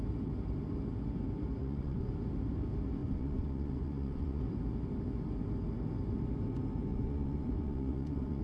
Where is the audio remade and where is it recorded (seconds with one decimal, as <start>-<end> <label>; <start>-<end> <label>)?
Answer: 0.0-1.6 recorded; 1.6-2.1 remade; 2.1-3.0 recorded; 3.0-4.4 remade; 4.4-6.9 recorded; 6.9-8.4 remade